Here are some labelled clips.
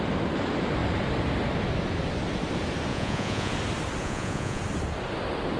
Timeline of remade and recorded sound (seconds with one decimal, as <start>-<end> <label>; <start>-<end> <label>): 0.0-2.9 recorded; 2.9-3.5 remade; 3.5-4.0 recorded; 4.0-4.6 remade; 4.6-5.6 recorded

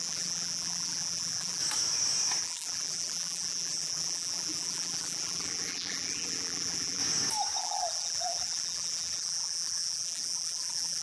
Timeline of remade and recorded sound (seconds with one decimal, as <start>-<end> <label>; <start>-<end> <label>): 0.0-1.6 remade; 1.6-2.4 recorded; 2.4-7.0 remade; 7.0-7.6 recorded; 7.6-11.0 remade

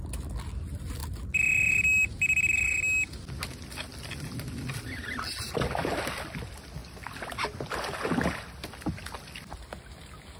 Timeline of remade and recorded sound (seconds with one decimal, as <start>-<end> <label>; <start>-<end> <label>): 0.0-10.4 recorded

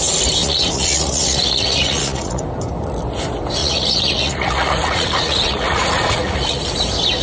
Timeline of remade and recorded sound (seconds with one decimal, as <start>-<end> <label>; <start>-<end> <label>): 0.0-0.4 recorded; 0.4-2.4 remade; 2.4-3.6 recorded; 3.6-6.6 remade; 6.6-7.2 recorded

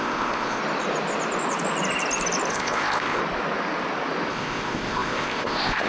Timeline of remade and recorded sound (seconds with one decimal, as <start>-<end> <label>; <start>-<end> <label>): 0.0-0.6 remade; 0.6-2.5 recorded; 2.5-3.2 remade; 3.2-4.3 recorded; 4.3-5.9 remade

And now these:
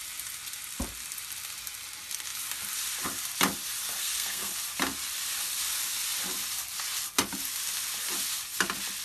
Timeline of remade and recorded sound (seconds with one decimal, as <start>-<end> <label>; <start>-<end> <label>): 0.0-4.0 recorded; 4.0-4.5 remade; 4.5-9.0 recorded